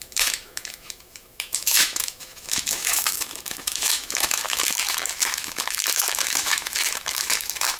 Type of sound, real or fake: fake